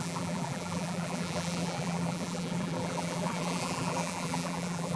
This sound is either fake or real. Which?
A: fake